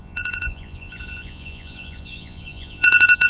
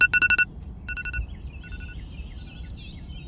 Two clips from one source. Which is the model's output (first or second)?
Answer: first